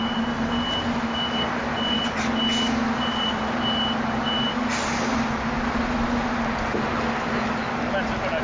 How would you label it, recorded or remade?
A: recorded